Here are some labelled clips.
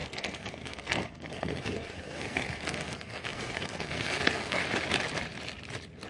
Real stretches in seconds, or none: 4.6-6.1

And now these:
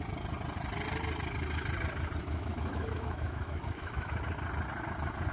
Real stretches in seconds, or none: 0.0-2.2; 4.2-5.3

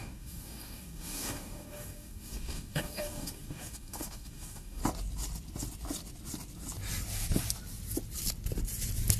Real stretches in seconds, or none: 4.8-9.2

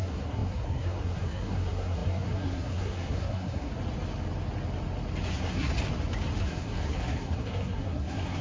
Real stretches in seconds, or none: 3.7-5.3; 5.7-6.4

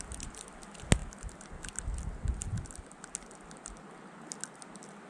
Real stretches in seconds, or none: 0.0-5.1

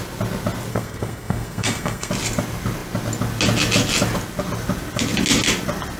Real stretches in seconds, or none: 0.0-0.7; 2.1-6.0

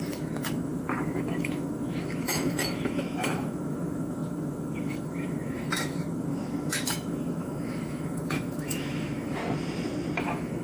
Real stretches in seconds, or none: 9.4-10.2

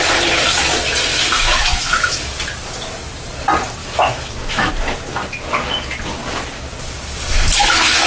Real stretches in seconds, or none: 0.0-1.1; 2.4-3.8; 4.7-8.1